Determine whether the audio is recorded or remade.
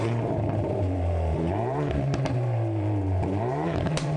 remade